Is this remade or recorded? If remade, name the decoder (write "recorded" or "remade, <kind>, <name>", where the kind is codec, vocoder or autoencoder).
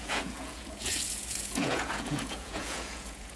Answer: remade, vocoder, Vocos